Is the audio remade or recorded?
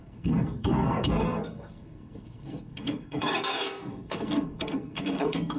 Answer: remade